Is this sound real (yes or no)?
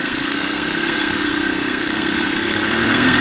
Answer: no